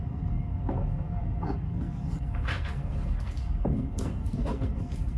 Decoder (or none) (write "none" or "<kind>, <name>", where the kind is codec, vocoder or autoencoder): codec, SNAC